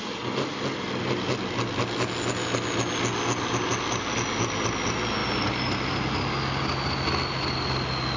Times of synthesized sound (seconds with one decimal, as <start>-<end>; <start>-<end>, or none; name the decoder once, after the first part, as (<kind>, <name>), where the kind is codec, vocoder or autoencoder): none